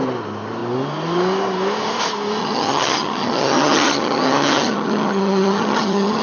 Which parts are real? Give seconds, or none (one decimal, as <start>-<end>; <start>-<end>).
0.0-2.4